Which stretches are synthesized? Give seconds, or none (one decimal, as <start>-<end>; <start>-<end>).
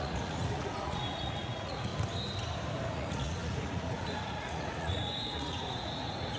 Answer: 0.0-1.9; 2.9-6.4